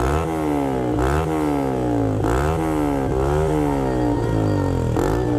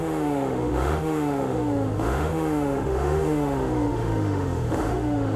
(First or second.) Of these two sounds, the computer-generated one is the second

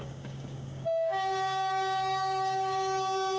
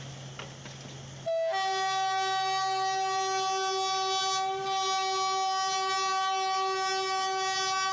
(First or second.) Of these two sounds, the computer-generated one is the first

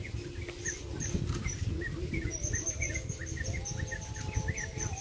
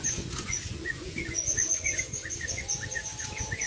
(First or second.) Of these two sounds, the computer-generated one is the second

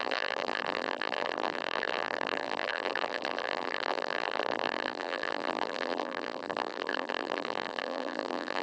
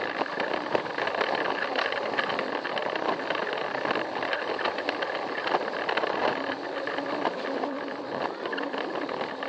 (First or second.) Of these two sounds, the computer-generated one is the first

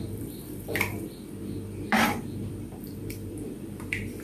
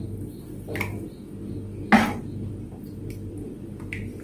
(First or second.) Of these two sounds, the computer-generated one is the first